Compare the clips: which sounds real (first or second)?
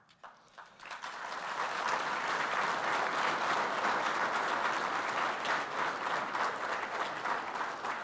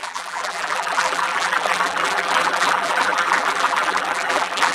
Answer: first